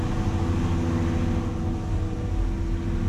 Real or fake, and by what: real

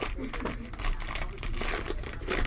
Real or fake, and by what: real